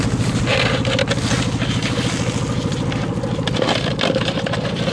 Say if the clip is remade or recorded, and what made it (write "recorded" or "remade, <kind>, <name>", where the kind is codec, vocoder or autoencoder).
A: recorded